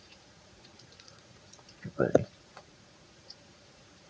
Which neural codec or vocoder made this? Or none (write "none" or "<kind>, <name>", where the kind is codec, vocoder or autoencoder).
vocoder, Vocos